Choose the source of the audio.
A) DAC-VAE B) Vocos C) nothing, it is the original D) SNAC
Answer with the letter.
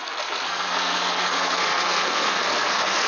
D